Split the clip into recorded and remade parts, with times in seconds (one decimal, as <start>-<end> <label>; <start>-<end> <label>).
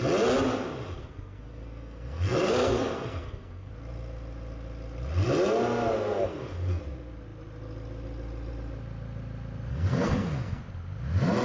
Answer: 0.0-1.0 recorded; 1.0-3.7 remade; 3.7-6.2 recorded; 6.2-6.8 remade; 6.8-9.7 recorded; 9.7-10.6 remade; 10.6-11.4 recorded